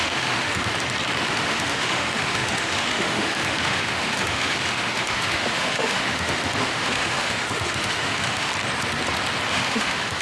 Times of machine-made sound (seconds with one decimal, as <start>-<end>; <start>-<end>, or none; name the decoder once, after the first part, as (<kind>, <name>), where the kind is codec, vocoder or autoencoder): 0.0-0.7 (autoencoder, DAC-VAE); 1.3-8.5; 9.5-10.2